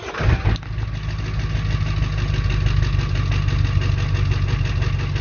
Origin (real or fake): real